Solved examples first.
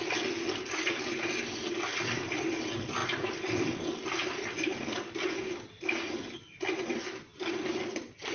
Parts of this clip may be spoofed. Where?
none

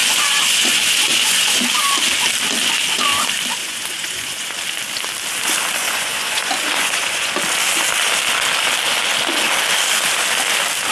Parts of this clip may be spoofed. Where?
0.0-1.6 (vocoder, Vocos); 3.6-4.6; 5.8-7.3

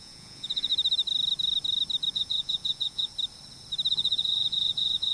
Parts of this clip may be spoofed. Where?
0.0-0.7 (vocoder, Vocos); 2.1-3.1; 3.9-5.1

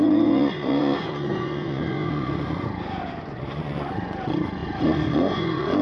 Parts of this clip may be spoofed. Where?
0.0-5.8 (vocoder, Vocos)

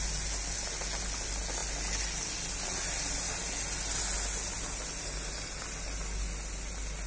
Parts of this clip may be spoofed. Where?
none

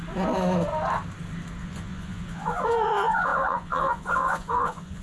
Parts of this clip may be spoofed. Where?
1.6-5.0 (vocoder, Vocos)

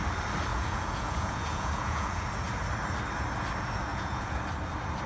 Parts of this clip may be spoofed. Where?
0.5-2.3 (vocoder, Vocos); 3.9-4.4

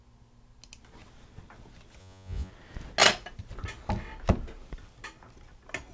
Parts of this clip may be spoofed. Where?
2.0-2.5 (vocoder, Vocos)